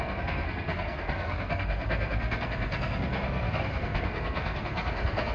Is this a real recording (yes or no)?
no